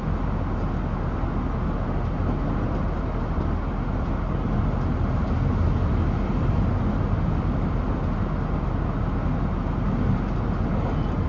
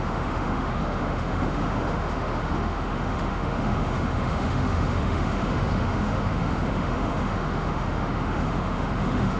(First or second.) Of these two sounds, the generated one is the second